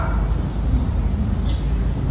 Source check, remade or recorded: recorded